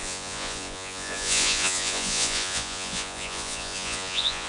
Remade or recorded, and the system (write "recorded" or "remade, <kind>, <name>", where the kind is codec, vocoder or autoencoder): remade, vocoder, Vocos